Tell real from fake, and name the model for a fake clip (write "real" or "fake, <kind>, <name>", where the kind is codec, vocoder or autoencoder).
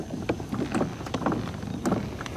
real